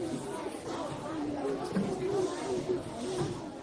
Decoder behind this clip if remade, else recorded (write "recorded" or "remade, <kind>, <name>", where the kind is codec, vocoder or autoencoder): recorded